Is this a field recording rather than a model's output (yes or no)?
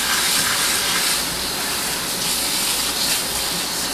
yes